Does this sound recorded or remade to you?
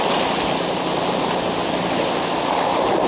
recorded